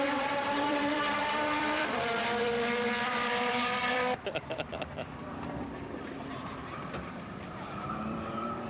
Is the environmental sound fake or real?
fake